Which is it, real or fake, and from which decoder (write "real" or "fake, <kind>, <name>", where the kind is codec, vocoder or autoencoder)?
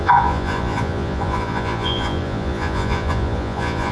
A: fake, vocoder, Vocos